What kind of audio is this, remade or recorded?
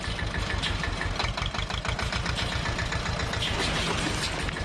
recorded